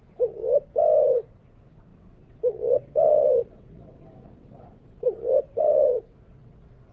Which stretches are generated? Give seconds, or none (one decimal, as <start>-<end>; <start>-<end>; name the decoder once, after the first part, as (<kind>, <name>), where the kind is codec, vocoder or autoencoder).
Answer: 0.0-0.4 (vocoder, WaveNeXt); 1.1-6.9

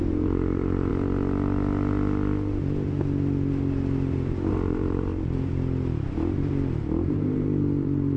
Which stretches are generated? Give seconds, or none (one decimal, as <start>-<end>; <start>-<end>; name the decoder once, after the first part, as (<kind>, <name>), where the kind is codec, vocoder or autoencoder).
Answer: 0.0-0.9 (vocoder, BigVGAN v2); 4.5-5.1; 7.1-8.2